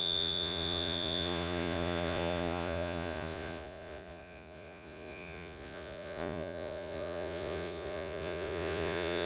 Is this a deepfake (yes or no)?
yes